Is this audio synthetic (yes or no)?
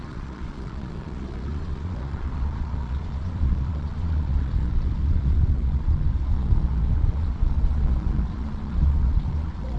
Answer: yes